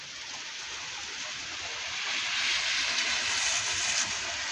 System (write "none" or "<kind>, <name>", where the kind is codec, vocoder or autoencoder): none